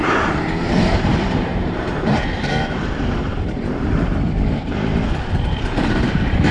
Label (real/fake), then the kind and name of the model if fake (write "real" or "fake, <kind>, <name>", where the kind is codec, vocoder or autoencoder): fake, vocoder, BigVGAN v2